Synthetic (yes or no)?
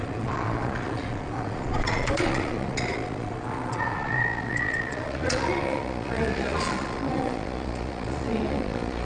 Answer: yes